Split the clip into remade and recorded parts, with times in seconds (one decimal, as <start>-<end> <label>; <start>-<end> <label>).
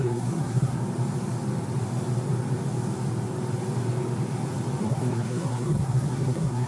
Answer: 0.0-0.8 remade; 0.8-4.8 recorded; 4.8-6.7 remade